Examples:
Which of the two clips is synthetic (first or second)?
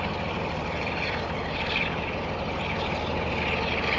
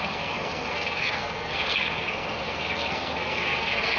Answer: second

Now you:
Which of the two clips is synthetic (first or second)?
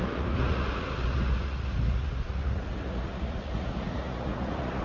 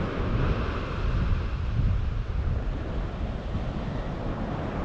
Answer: first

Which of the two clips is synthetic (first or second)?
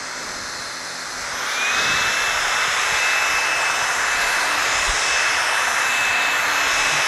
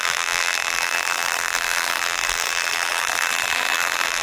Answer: second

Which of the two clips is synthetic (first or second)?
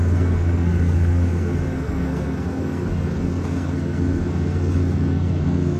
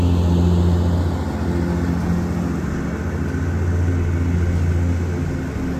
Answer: first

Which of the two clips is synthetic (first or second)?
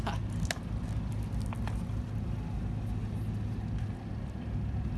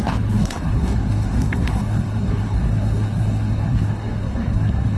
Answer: second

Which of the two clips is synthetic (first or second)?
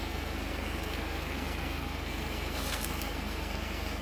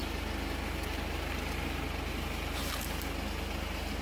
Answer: first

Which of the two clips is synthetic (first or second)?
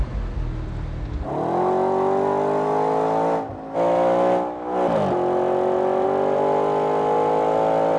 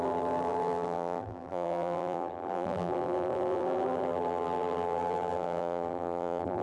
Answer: second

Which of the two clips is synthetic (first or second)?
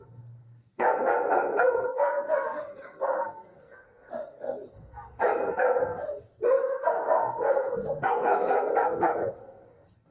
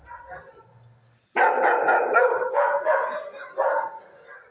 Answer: first